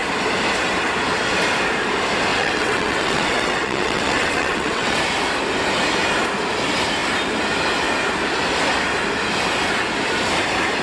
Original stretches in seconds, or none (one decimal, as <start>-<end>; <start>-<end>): 0.0-2.3; 5.0-10.8